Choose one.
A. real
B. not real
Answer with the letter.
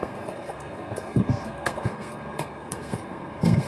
B